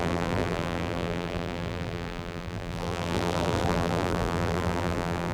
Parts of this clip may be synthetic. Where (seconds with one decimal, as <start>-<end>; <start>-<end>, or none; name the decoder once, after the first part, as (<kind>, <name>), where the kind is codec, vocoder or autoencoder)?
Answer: 0.0-5.3 (vocoder, BigVGAN v2)